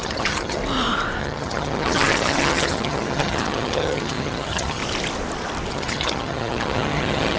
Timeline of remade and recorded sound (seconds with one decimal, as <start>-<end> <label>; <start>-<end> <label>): 0.0-0.6 remade; 0.6-1.2 recorded; 1.2-4.8 remade; 4.8-5.7 recorded; 5.7-7.4 remade